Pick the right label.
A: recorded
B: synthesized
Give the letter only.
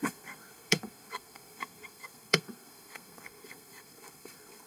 B